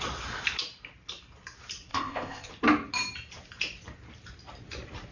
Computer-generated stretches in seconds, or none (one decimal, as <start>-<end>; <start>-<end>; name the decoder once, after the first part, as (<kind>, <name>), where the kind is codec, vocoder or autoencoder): 1.9-2.5 (codec, ZipCodec)